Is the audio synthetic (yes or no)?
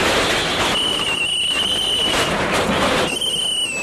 no